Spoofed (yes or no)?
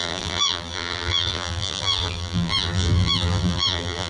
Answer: yes